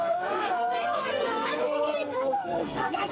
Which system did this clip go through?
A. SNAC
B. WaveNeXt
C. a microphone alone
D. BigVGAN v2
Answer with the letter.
A